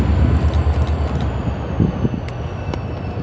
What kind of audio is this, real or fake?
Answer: real